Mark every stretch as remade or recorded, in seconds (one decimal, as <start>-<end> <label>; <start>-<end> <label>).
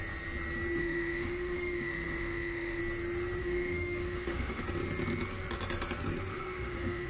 0.0-0.8 recorded; 0.8-2.8 remade; 2.8-3.4 recorded; 3.4-4.6 remade; 4.6-6.3 recorded; 6.3-7.1 remade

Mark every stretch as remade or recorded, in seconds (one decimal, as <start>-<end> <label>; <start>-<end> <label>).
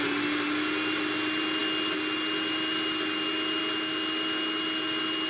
0.0-5.3 recorded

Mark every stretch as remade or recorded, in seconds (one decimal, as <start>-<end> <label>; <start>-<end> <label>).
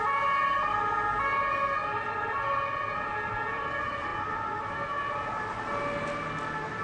0.0-6.8 recorded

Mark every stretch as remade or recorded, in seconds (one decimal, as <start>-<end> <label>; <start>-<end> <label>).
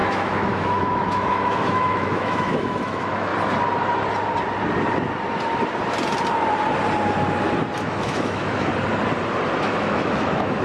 0.0-3.3 remade; 3.3-7.8 recorded; 7.8-8.7 remade; 8.7-9.6 recorded; 9.6-10.6 remade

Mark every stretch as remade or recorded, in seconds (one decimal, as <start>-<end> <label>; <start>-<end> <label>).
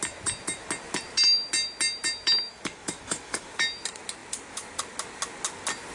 0.0-2.5 recorded; 2.5-3.5 remade; 3.5-5.9 recorded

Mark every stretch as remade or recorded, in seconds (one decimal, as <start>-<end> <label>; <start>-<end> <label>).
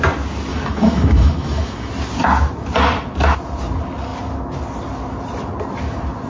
0.0-0.5 recorded; 0.5-1.9 remade; 1.9-6.3 recorded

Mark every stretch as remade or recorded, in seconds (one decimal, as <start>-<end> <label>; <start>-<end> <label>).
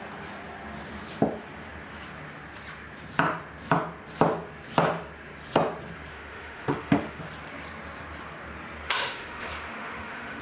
0.0-6.1 recorded; 6.1-7.2 remade; 7.2-8.8 recorded; 8.8-10.4 remade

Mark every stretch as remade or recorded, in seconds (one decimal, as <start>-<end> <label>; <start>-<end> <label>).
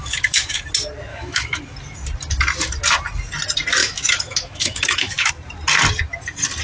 0.0-0.6 remade; 0.6-1.1 recorded; 1.1-1.6 remade; 1.6-3.8 recorded; 3.8-5.3 remade; 5.3-6.6 recorded